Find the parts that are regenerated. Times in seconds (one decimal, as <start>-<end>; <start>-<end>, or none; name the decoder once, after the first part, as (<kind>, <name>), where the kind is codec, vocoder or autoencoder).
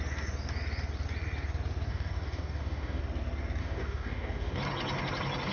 1.9-3.0 (codec, DAC); 3.6-4.6